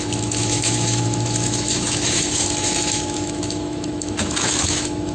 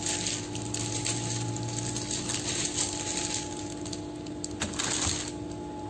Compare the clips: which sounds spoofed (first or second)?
first